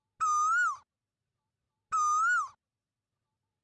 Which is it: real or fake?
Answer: real